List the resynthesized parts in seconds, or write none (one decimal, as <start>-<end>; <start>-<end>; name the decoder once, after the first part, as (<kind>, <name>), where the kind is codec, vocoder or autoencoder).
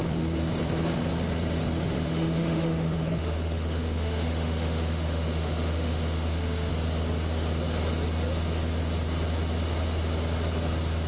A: 2.1-6.7 (autoencoder, DAC-VAE)